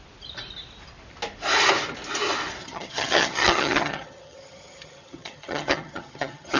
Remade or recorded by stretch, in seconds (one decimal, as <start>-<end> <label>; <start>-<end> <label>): 0.0-2.6 recorded; 2.6-6.6 remade